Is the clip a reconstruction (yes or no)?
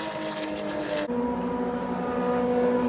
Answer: no